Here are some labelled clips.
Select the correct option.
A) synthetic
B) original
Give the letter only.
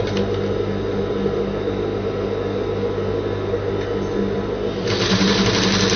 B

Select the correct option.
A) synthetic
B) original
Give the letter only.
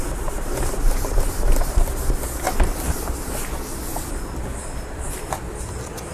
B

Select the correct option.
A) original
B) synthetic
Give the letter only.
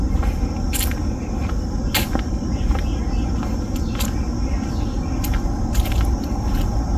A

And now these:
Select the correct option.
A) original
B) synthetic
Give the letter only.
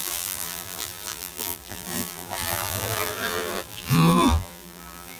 B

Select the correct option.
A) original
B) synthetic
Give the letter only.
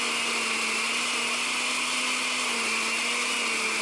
A